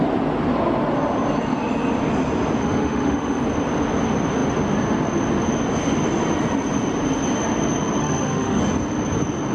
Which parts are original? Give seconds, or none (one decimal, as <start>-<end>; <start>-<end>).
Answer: 0.0-2.6; 3.4-8.0; 8.6-9.5